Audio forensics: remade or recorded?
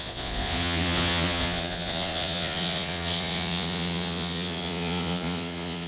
remade